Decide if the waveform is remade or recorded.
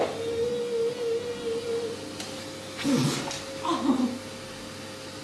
recorded